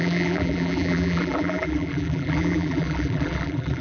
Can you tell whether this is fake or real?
fake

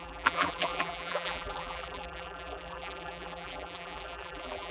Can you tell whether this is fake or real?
fake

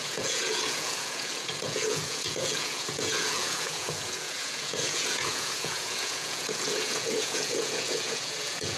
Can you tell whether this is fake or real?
fake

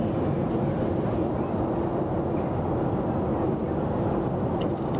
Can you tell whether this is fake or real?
real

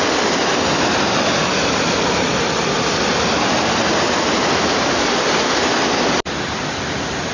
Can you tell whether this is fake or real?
real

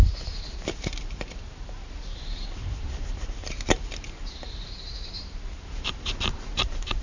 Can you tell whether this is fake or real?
fake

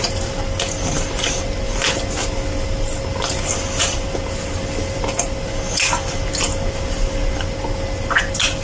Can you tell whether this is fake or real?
real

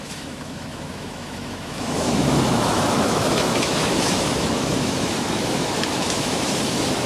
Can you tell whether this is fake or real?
fake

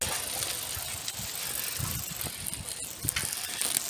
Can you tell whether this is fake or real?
real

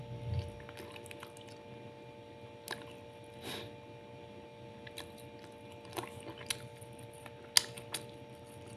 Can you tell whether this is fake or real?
real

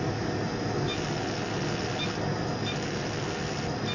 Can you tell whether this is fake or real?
real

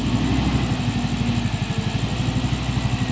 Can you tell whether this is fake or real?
real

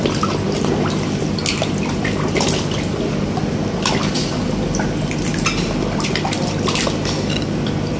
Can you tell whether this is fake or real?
real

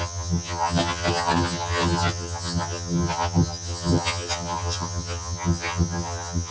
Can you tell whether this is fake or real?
fake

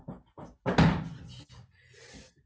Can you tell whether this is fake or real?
real